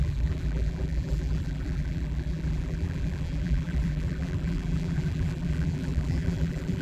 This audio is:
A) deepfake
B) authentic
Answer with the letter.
A